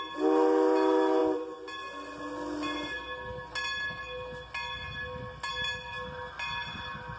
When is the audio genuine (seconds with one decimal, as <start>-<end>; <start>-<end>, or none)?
0.0-7.2